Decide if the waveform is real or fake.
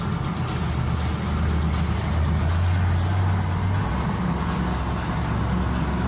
real